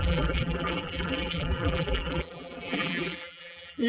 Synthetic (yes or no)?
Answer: yes